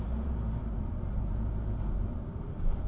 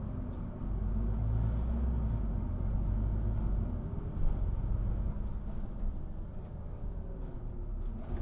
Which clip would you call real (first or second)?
second